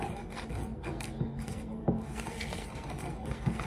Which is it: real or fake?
fake